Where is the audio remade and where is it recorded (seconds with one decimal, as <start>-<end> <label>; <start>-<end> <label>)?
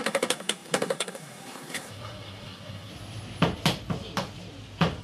0.0-2.9 remade; 2.9-5.0 recorded